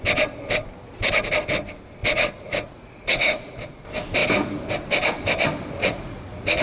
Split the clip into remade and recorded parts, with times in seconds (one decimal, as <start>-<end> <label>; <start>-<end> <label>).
0.0-2.0 recorded; 2.0-3.6 remade; 3.6-5.8 recorded; 5.8-6.6 remade